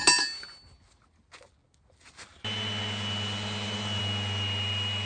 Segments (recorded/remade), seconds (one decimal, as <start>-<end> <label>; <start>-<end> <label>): 0.0-5.1 recorded